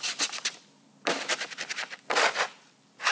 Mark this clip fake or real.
real